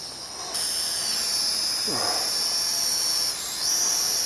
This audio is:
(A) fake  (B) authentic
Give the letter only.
B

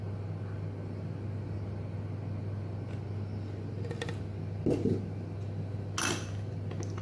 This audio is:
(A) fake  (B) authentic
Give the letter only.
B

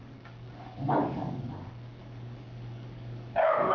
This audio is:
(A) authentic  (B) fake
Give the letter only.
B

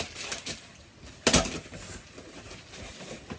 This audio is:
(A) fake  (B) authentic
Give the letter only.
B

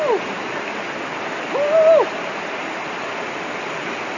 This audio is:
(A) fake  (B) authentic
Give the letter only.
B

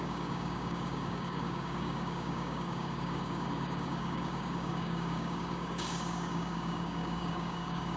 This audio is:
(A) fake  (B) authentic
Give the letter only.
A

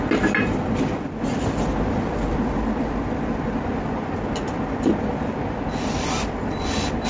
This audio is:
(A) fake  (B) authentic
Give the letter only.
B